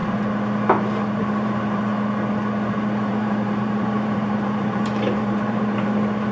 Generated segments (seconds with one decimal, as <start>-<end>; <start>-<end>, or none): 1.2-1.9; 2.7-6.3